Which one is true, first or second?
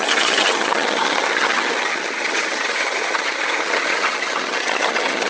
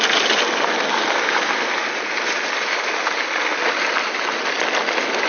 second